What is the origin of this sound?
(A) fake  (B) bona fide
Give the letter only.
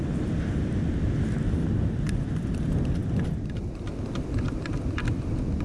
B